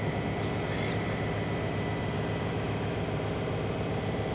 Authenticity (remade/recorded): recorded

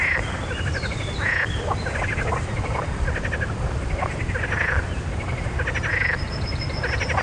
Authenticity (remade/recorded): recorded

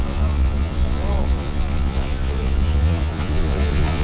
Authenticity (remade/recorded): remade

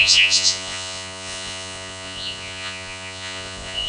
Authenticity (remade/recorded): remade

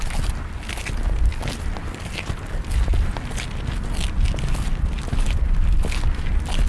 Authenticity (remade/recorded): recorded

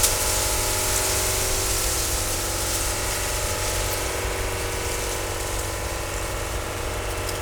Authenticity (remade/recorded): recorded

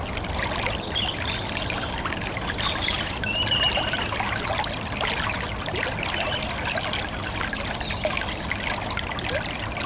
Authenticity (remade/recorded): recorded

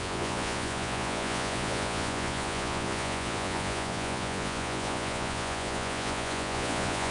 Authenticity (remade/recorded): remade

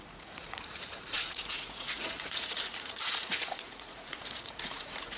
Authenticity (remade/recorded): remade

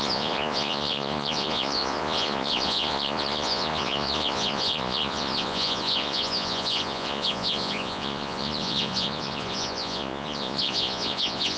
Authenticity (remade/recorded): remade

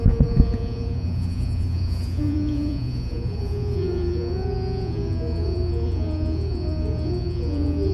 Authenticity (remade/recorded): remade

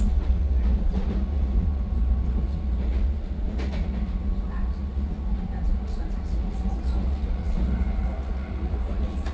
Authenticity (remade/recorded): remade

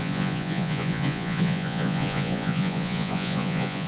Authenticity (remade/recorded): remade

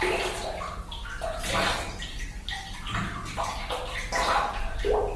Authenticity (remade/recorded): recorded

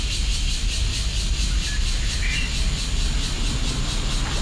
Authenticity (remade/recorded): recorded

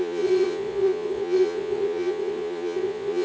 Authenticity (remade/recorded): remade